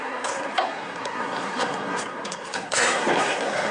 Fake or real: fake